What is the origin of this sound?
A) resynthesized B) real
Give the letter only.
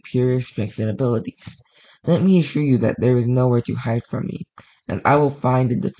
B